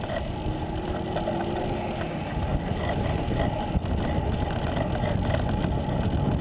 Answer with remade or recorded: recorded